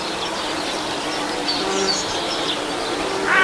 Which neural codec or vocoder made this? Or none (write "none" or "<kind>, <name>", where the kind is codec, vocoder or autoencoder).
none